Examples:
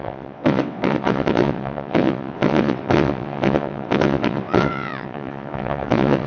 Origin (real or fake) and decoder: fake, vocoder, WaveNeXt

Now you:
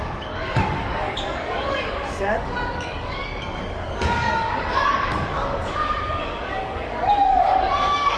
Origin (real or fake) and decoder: fake, codec, DAC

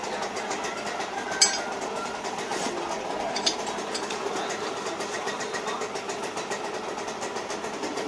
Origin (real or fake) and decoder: real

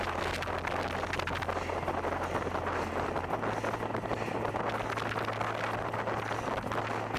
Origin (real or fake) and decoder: real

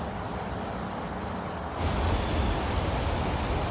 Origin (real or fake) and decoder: real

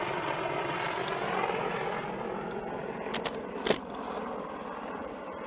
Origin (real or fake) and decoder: real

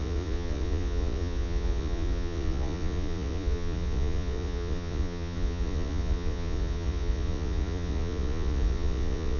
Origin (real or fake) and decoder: fake, vocoder, Vocos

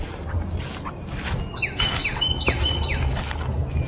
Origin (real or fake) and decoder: real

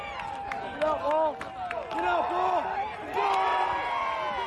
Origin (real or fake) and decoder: real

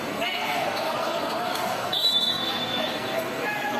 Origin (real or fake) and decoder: fake, codec, SNAC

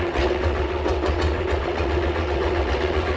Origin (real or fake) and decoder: fake, vocoder, WaveNeXt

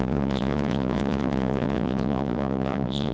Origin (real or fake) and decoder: fake, vocoder, Vocos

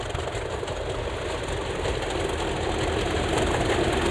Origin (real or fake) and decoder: real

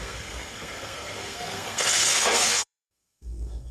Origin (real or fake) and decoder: fake, codec, SNAC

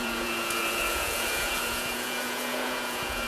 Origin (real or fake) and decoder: fake, vocoder, Vocos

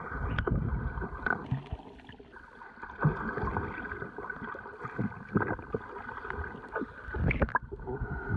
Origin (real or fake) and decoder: real